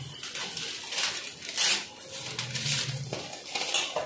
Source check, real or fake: real